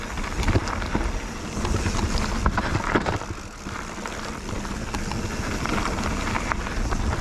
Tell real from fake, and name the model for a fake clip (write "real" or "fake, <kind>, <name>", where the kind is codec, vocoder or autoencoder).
real